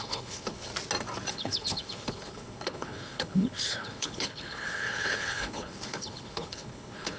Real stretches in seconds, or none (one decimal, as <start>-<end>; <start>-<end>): 0.7-1.3